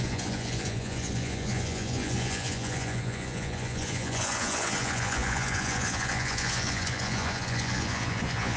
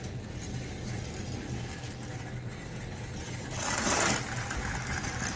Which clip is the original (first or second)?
second